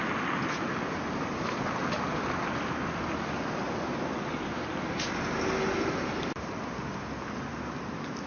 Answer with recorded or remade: recorded